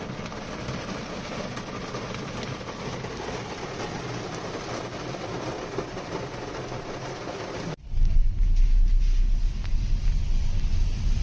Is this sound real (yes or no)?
yes